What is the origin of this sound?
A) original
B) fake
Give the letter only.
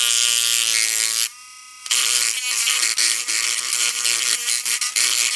A